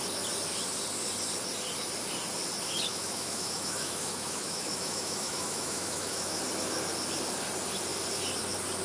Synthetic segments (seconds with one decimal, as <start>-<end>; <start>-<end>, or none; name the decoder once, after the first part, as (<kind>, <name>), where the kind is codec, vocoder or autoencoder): 2.9-6.4 (autoencoder, DAC-VAE)

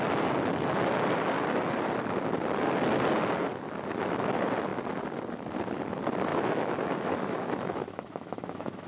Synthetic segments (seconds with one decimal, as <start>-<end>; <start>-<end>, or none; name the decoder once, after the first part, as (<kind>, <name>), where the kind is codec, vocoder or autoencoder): 6.3-8.9 (autoencoder, DAC-VAE)

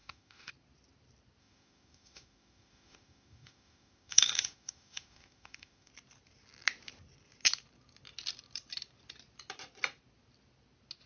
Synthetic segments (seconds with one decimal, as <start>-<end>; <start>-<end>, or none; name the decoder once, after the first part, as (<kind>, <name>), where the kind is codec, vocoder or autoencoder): 0.0-0.5 (autoencoder, DAC-VAE); 1.4-5.9